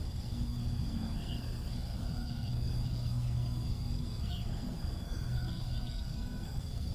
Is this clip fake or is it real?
fake